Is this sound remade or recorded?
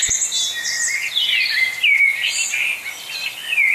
recorded